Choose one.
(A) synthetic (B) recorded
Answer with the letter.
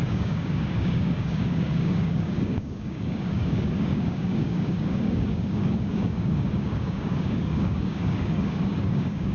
A